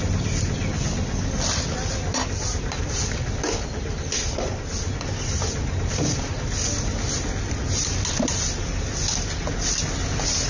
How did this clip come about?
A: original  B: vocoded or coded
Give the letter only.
A